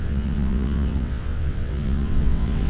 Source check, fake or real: fake